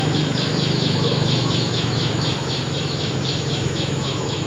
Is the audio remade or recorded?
remade